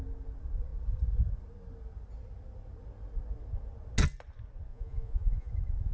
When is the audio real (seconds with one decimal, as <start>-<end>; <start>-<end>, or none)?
0.0-4.7; 5.5-5.9